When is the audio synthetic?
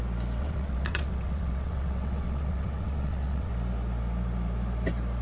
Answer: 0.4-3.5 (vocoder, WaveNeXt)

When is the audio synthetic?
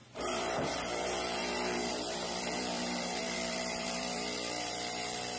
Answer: 0.0-5.4 (vocoder, BigVGAN v2)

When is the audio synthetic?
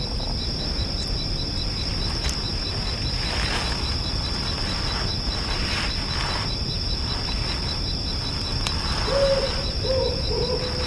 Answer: none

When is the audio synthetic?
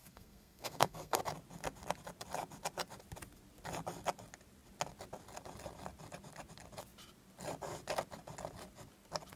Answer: 0.0-1.2 (codec, SNAC)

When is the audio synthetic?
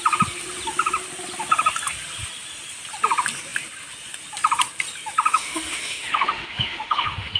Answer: 5.3-7.4 (autoencoder, DAC-VAE)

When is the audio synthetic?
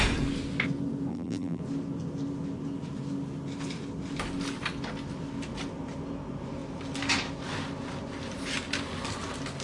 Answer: 1.1-1.6 (vocoder, BigVGAN v2)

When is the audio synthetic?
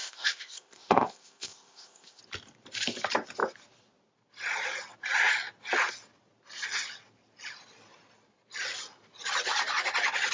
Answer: 0.0-2.2 (codec, ZipCodec)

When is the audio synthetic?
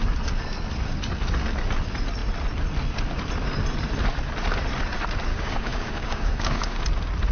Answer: 5.3-6.8 (codec, DAC)